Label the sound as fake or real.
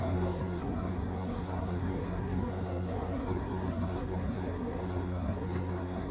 fake